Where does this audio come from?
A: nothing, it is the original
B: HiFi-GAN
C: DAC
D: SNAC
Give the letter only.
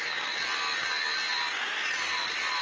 A